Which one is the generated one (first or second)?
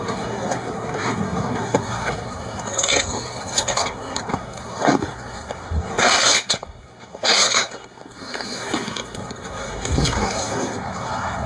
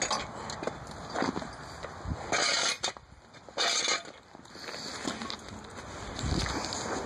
first